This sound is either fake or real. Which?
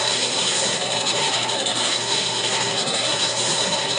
fake